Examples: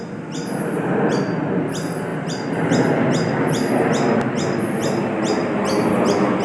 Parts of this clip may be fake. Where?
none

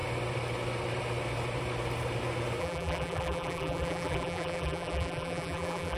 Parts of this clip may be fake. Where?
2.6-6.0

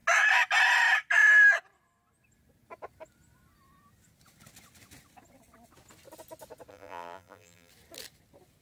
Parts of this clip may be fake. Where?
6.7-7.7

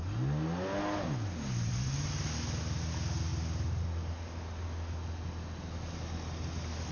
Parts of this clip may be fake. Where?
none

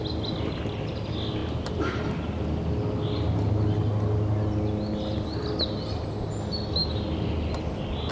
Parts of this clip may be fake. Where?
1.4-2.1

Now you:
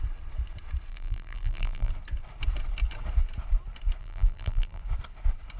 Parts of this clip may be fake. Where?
0.9-1.9; 4.0-4.8

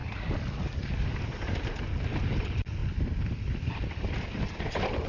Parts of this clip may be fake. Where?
0.0-5.1